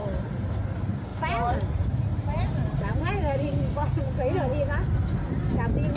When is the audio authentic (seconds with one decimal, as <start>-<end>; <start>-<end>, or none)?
0.6-1.1; 4.0-6.0